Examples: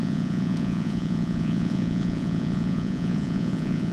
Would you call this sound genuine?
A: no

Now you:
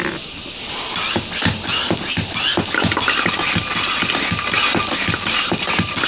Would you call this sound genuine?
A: yes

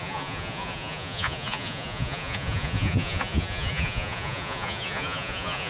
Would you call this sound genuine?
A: no